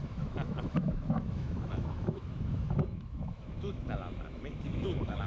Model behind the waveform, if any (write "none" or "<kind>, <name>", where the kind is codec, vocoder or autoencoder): autoencoder, DAC-VAE